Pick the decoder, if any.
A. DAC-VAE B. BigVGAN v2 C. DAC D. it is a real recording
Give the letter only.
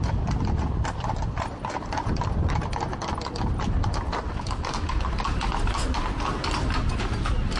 D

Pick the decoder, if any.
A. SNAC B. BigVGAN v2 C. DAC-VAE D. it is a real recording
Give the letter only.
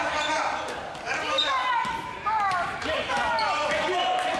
B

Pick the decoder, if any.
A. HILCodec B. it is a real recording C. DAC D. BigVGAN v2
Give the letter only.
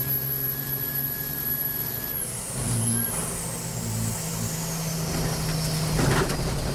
B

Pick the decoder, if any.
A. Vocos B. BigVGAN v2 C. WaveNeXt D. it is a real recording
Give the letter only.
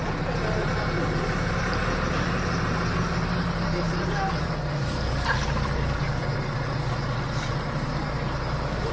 B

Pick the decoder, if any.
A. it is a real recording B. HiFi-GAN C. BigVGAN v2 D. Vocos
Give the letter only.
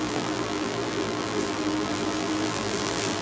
C